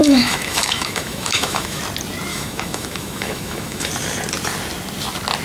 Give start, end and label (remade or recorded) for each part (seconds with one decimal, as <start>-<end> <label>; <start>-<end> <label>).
0.0-1.8 remade; 1.8-2.3 recorded; 2.3-3.9 remade; 3.9-5.4 recorded